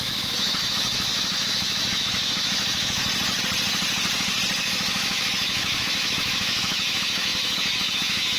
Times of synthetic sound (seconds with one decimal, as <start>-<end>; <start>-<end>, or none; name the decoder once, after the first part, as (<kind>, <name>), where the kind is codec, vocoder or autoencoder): 0.0-3.0 (autoencoder, DAC-VAE); 4.6-8.4